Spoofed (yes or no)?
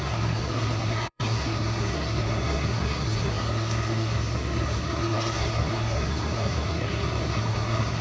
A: yes